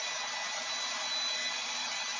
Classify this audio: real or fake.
real